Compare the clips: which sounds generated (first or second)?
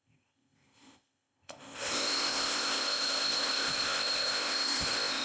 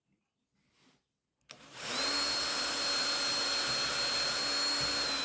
first